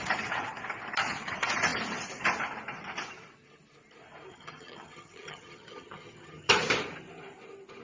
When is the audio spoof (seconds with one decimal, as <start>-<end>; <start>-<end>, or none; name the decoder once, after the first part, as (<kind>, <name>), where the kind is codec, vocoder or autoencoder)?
4.3-6.5 (vocoder, HiFi-GAN)